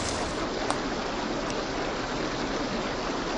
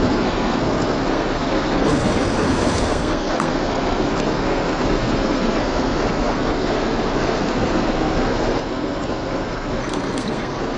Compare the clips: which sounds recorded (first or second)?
first